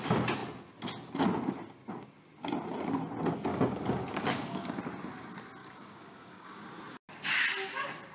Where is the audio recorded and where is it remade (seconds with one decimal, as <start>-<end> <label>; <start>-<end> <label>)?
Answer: 0.0-3.5 recorded; 3.5-4.8 remade; 4.8-5.6 recorded; 5.6-6.6 remade; 6.6-8.1 recorded